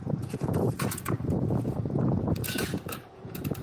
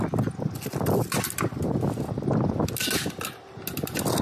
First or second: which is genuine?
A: second